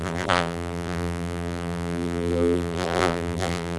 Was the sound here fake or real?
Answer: fake